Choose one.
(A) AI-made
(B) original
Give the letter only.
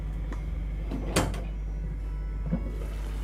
B